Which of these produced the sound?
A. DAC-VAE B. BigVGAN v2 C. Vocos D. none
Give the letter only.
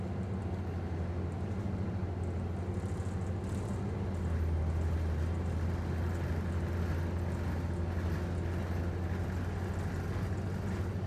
D